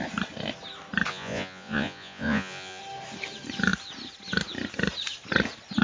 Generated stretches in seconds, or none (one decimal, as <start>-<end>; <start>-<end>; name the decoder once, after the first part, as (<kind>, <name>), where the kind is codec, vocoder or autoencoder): 1.1-2.8 (vocoder, Vocos)